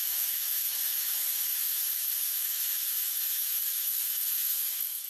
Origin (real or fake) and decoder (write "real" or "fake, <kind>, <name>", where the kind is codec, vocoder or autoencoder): fake, autoencoder, DAC-VAE